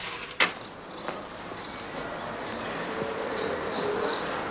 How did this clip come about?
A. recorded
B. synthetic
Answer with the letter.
A